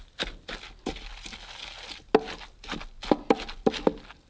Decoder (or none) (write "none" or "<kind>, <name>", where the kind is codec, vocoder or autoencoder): none